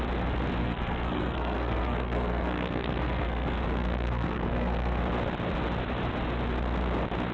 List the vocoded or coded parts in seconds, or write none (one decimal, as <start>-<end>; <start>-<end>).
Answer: 0.6-5.0